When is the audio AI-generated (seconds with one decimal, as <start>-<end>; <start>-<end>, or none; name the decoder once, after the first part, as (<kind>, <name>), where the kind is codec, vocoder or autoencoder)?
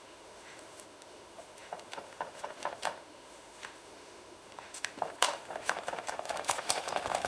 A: 0.0-7.3 (autoencoder, DAC-VAE)